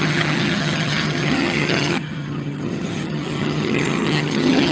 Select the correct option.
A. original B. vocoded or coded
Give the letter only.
B